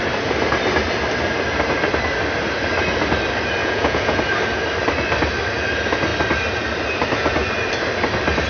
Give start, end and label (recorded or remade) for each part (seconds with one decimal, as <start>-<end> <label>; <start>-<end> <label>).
0.0-3.6 recorded; 3.6-4.2 remade; 4.2-8.5 recorded